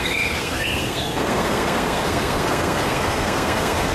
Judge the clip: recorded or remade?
remade